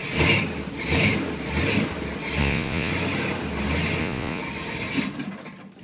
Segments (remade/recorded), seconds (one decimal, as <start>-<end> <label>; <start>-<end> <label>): 0.0-2.4 recorded; 2.4-2.9 remade; 2.9-4.0 recorded; 4.0-4.4 remade; 4.4-5.8 recorded